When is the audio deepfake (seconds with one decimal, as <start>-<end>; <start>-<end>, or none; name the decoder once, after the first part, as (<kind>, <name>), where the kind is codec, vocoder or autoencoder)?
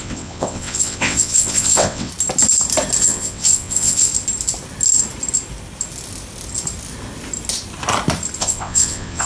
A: 0.0-2.1 (vocoder, WaveNeXt); 3.0-4.1; 8.4-9.3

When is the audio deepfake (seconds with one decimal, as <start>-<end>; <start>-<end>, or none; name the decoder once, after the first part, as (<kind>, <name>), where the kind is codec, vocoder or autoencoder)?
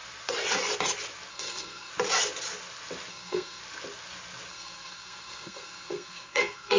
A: 1.3-1.9 (codec, SNAC); 3.1-3.6; 4.5-6.8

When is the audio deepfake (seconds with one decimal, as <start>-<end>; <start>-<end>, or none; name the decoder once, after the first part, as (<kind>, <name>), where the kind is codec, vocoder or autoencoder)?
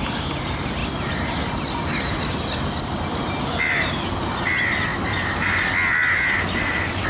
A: none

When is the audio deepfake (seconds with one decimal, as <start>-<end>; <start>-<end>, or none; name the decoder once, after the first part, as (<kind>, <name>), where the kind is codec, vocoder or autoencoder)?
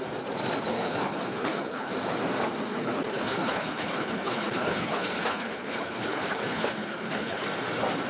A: 0.7-1.9 (codec, HILCodec); 2.7-7.4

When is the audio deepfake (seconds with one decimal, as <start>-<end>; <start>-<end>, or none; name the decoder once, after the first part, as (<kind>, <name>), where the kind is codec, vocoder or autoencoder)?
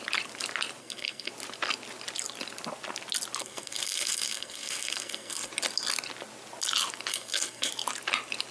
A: 0.8-1.3 (codec, SNAC); 3.4-5.5; 7.1-7.7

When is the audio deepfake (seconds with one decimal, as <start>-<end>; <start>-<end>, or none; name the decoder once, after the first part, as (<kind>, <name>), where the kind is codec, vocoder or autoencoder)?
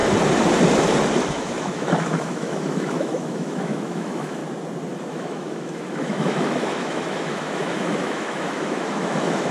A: 1.3-4.4 (autoencoder, DAC-VAE); 5.1-9.5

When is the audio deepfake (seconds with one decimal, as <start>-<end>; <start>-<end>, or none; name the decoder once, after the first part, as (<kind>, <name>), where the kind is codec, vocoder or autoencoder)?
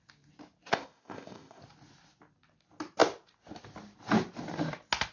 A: 0.7-1.6 (codec, ZipCodec)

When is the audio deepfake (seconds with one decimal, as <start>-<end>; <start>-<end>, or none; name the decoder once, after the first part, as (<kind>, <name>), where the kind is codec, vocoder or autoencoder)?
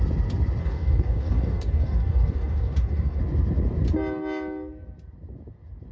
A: 0.6-3.2 (codec, DAC)